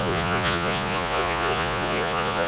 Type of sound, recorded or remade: remade